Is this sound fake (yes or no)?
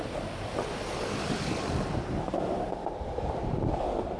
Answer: no